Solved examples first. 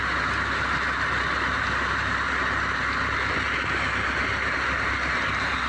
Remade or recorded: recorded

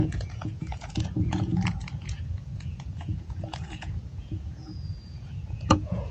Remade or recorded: remade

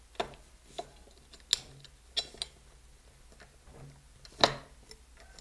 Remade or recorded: recorded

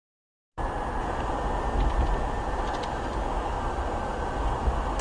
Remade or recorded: recorded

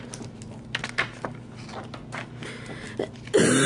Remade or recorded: recorded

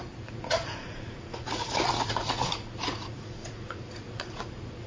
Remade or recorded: remade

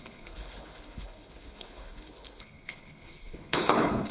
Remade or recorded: remade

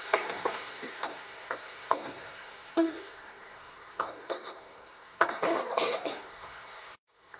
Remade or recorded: remade